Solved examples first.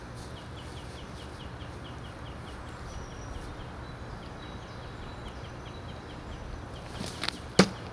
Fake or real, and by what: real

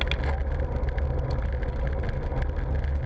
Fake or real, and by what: real